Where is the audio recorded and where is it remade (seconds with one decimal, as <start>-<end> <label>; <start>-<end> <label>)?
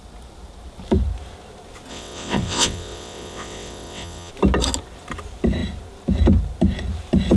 0.0-1.9 recorded; 1.9-4.3 remade; 4.3-7.4 recorded